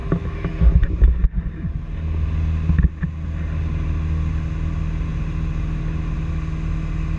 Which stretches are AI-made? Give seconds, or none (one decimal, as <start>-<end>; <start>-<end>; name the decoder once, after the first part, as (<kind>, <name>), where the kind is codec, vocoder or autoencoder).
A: 0.0-0.5 (autoencoder, DAC-VAE)